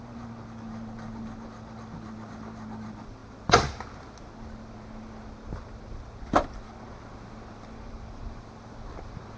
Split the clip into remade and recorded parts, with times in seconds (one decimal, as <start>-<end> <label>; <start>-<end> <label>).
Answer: 0.0-9.4 recorded